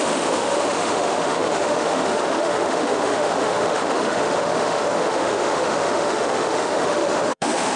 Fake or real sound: fake